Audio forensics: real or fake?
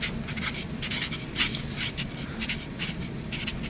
real